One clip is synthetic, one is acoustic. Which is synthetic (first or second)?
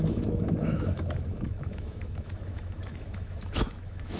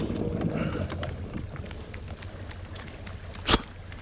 first